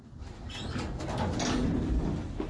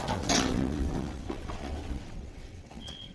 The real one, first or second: first